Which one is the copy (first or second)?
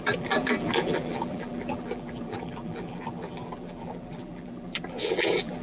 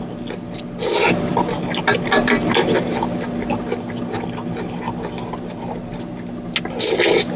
first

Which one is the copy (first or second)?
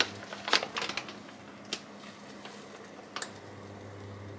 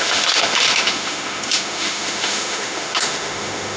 second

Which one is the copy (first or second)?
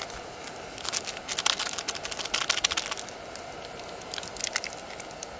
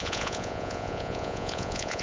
second